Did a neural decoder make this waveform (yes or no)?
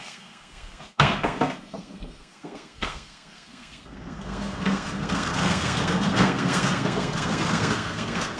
yes